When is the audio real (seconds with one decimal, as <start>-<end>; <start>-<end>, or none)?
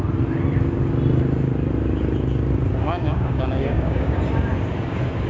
0.0-2.8; 4.2-5.3